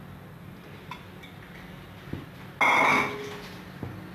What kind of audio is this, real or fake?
real